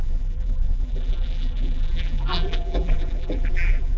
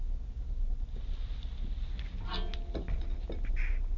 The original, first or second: second